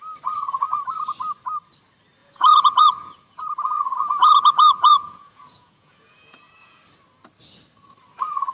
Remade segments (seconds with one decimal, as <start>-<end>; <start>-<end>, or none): 2.2-3.4; 4.2-6.8